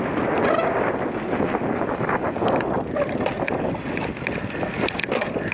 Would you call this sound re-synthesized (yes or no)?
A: no